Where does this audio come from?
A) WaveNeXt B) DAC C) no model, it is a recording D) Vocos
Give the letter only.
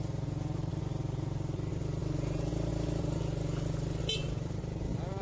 C